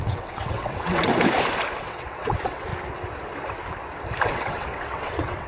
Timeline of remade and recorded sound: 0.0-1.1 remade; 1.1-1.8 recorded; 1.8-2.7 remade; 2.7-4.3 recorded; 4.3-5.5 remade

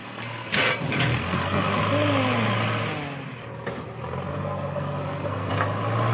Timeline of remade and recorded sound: 0.0-0.5 remade; 0.5-1.1 recorded; 1.1-1.8 remade; 1.8-4.3 recorded; 4.3-5.5 remade; 5.5-6.1 recorded